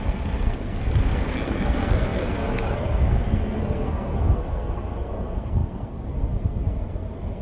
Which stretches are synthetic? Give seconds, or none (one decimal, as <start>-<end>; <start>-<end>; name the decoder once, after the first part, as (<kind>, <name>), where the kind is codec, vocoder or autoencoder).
0.0-7.4 (codec, SNAC)